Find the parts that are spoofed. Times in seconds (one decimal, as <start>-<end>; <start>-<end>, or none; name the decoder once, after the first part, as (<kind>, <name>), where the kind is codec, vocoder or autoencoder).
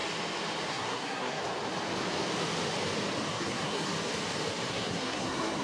0.7-1.4 (codec, SNAC); 3.3-3.9; 4.7-5.6